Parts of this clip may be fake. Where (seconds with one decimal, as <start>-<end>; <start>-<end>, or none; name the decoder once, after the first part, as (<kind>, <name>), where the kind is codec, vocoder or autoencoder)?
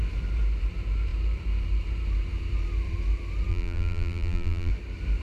3.5-4.7 (vocoder, BigVGAN v2)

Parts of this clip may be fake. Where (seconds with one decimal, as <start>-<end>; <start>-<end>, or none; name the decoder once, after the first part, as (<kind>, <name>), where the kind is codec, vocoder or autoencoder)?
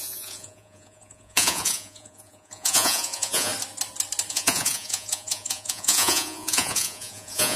0.0-3.5 (vocoder, Vocos); 4.3-7.6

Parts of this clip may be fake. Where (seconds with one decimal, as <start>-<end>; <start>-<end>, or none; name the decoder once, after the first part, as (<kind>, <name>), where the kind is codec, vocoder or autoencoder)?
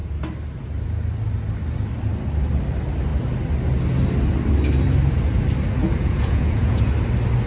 5.8-6.9 (vocoder, Vocos)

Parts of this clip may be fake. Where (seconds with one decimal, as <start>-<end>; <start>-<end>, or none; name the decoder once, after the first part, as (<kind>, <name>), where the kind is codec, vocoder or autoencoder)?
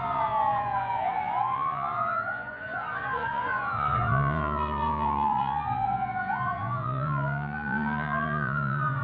0.0-9.0 (vocoder, Vocos)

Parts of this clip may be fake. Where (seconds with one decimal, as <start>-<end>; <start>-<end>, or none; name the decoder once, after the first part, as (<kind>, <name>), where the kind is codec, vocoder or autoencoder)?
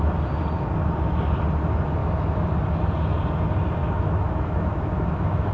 2.0-2.5 (autoencoder, DAC-VAE); 3.8-5.5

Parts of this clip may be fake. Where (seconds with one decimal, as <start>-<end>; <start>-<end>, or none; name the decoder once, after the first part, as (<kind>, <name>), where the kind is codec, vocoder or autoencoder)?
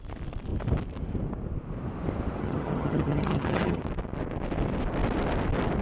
2.4-3.8 (vocoder, HiFi-GAN)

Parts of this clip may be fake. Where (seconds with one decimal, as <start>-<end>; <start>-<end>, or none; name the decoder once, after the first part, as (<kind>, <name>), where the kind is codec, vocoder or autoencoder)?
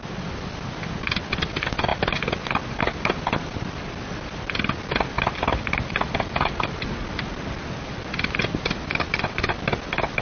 none